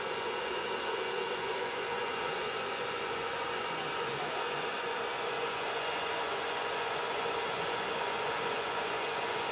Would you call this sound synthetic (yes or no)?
yes